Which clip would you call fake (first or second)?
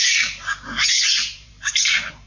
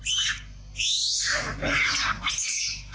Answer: first